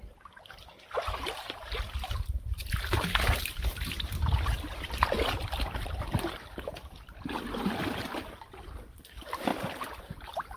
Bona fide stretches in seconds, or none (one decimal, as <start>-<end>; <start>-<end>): 0.0-2.6; 7.8-9.5; 10.0-10.6